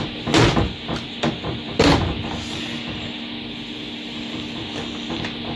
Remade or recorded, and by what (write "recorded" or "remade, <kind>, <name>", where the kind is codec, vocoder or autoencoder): recorded